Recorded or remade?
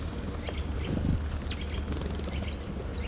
recorded